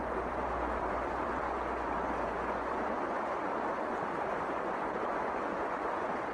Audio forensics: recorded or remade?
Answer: remade